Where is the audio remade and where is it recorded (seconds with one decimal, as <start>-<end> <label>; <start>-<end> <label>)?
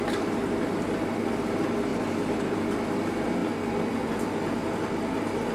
0.0-1.9 recorded; 1.9-2.6 remade; 2.6-4.6 recorded; 4.6-5.5 remade